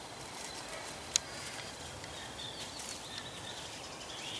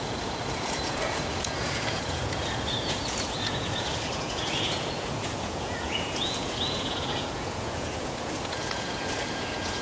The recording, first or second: first